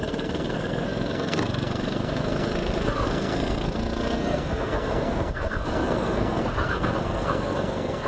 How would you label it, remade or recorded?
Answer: remade